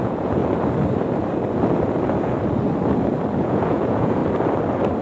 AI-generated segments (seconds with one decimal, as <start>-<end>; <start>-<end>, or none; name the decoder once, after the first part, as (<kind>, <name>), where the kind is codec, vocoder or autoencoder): 0.0-0.4 (vocoder, Vocos); 3.4-4.2